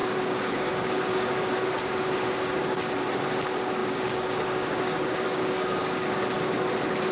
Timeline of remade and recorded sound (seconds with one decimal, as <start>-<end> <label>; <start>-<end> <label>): 0.0-2.9 remade; 2.9-3.8 recorded; 3.8-6.2 remade; 6.2-7.1 recorded